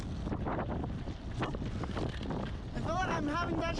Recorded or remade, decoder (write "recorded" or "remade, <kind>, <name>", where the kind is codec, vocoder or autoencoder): recorded